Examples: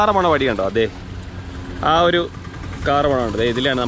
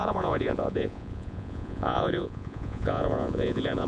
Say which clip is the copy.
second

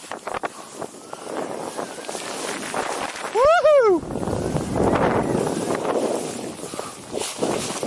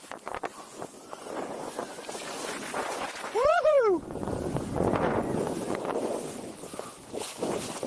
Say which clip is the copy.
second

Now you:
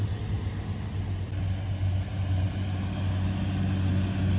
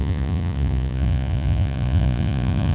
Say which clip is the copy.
second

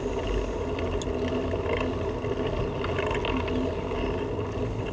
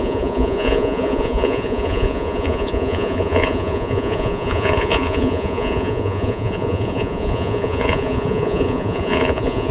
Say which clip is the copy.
second